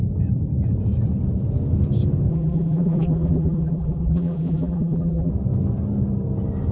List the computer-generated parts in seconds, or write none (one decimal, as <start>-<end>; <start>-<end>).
2.3-5.3